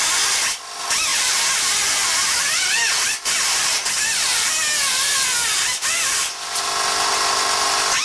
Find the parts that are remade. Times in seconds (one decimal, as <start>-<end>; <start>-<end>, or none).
1.1-4.5